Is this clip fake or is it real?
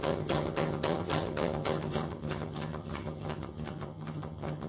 fake